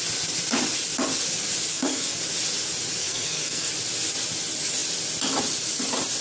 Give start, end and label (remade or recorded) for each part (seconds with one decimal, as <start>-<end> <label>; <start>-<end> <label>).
0.0-1.7 recorded; 1.7-2.2 remade; 2.2-3.0 recorded; 3.0-3.7 remade; 3.7-6.2 recorded